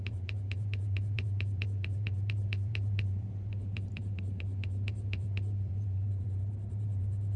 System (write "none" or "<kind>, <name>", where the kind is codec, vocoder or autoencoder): vocoder, BigVGAN v2